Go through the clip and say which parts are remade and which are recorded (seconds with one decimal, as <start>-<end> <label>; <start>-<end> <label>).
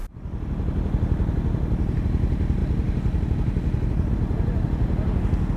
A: 0.0-5.6 recorded